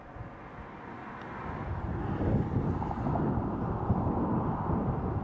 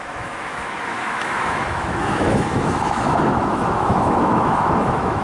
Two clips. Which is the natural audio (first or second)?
first